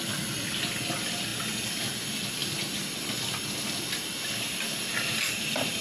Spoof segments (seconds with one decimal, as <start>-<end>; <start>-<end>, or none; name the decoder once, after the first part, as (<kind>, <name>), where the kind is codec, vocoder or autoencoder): none